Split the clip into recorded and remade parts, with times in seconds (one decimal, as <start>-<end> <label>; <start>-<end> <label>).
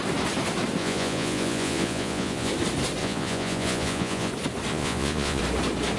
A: 0.0-0.8 recorded; 0.8-2.5 remade; 2.5-3.0 recorded; 3.0-4.3 remade; 4.3-4.7 recorded; 4.7-5.4 remade; 5.4-6.0 recorded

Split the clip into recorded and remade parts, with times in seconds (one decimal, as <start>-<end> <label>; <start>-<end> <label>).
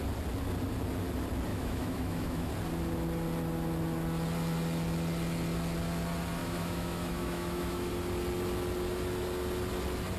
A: 0.0-1.5 recorded; 1.5-2.5 remade; 2.5-6.4 recorded; 6.4-7.9 remade; 7.9-10.2 recorded